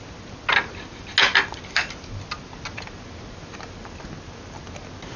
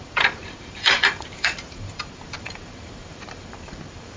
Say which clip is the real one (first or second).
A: first